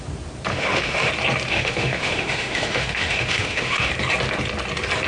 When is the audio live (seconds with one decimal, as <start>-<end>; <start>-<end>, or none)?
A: 0.0-0.5; 1.1-1.5; 3.9-5.1